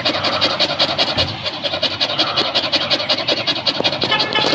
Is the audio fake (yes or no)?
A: no